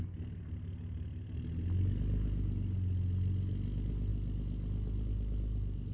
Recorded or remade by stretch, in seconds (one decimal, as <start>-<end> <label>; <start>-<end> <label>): 0.0-5.9 recorded